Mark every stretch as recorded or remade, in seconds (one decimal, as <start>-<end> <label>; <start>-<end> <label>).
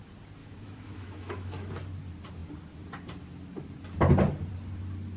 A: 0.0-0.4 recorded; 0.4-1.7 remade; 1.7-5.2 recorded